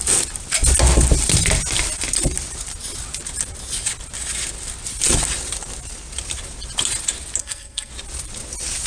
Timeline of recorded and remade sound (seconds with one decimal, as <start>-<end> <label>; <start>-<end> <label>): 0.0-7.4 recorded; 7.4-7.9 remade; 7.9-8.9 recorded